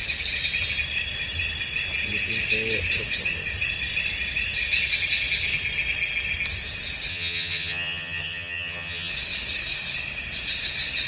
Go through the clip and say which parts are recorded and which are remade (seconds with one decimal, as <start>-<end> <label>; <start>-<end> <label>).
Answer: 0.0-7.1 recorded; 7.1-9.1 remade; 9.1-11.1 recorded